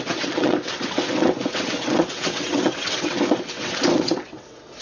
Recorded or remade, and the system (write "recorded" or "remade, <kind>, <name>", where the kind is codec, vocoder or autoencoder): remade, vocoder, WaveNeXt